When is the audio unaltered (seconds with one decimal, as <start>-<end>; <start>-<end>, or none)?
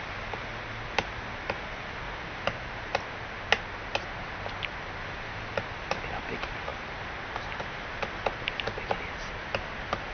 0.0-10.1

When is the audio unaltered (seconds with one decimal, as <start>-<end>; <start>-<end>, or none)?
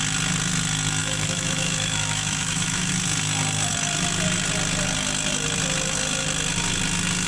0.0-1.0; 2.9-7.3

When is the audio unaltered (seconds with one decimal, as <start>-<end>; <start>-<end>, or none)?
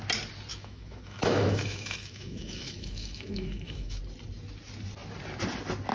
0.0-0.5; 4.0-5.9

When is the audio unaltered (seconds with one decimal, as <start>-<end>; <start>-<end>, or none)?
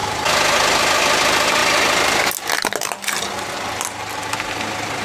0.0-5.0